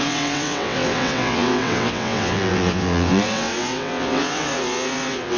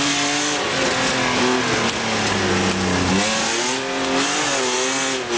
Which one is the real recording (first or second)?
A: second